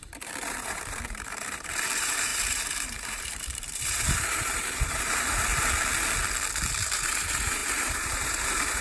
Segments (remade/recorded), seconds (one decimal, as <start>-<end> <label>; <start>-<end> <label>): 0.0-5.5 remade; 5.5-6.7 recorded; 6.7-8.8 remade